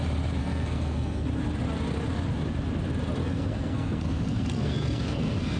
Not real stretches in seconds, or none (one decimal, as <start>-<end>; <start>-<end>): 0.4-1.3; 3.2-5.6